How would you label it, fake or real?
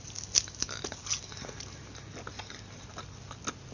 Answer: real